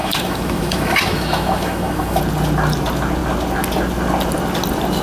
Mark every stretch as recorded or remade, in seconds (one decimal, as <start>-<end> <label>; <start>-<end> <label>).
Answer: 0.0-2.2 remade; 2.2-5.0 recorded